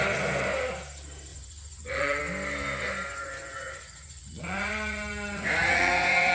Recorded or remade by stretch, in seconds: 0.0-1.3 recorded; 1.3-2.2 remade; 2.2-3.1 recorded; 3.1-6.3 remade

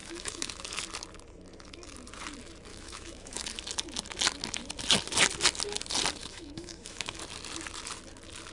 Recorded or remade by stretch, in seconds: 0.0-0.8 remade; 0.8-2.7 recorded; 2.7-3.5 remade; 3.5-6.2 recorded; 6.2-7.2 remade; 7.2-8.5 recorded

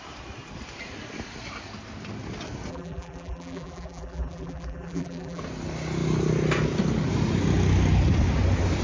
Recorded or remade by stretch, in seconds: 0.0-2.7 recorded; 2.7-5.4 remade; 5.4-8.8 recorded

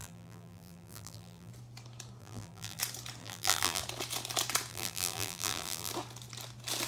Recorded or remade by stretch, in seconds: 0.0-1.5 remade; 1.5-2.2 recorded; 2.2-2.8 remade; 2.8-3.2 recorded; 3.2-3.8 remade; 3.8-4.7 recorded; 4.7-5.9 remade; 5.9-6.9 recorded

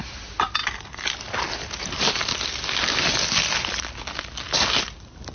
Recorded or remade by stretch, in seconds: 0.0-5.3 recorded